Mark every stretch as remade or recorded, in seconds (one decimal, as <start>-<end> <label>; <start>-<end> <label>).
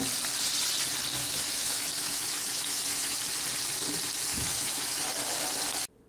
0.0-1.2 recorded; 1.2-3.2 remade; 3.2-4.3 recorded; 4.3-5.1 remade; 5.1-6.1 recorded